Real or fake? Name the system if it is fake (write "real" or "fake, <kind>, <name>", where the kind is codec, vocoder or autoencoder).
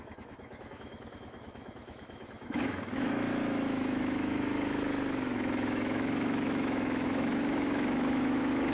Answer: fake, autoencoder, DAC-VAE